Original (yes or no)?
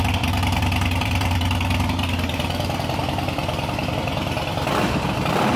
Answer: no